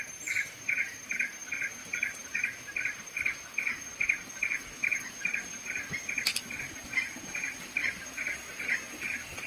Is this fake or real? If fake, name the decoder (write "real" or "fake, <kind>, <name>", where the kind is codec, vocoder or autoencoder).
real